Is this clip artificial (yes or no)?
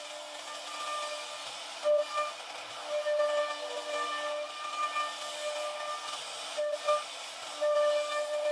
no